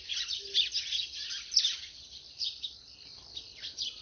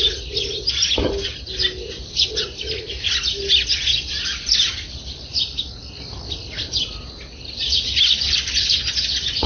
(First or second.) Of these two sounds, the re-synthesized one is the first